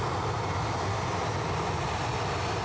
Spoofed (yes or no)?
no